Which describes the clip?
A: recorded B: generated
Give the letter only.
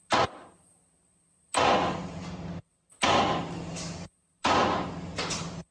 A